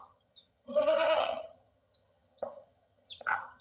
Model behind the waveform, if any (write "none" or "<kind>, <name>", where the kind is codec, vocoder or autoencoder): vocoder, HiFi-GAN